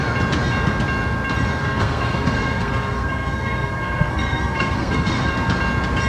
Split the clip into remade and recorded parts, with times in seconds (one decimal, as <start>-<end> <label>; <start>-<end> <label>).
0.0-1.6 recorded; 1.6-5.3 remade; 5.3-6.1 recorded